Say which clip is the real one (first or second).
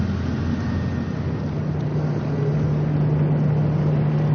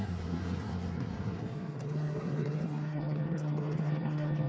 first